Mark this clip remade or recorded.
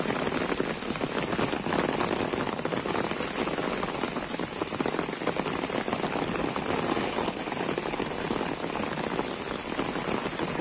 recorded